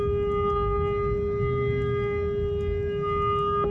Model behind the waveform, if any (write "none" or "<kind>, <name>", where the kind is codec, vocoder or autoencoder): none